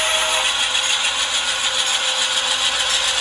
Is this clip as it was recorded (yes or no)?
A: yes